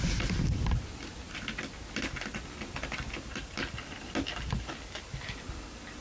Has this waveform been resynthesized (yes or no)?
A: no